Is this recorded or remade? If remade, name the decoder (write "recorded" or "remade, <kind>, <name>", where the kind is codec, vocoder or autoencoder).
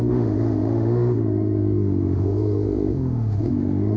remade, autoencoder, DAC-VAE